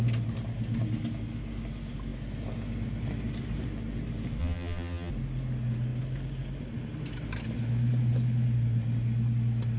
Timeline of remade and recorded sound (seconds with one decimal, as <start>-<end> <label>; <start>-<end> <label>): 0.0-4.4 recorded; 4.4-5.1 remade; 5.1-9.8 recorded